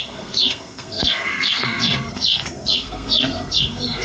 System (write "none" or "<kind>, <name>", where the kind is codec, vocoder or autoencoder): codec, SNAC